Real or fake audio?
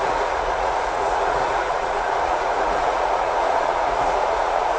fake